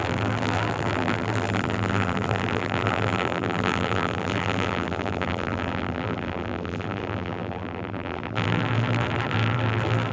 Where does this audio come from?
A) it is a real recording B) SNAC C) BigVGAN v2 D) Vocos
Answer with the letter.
C